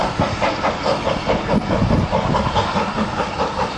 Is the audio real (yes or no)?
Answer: yes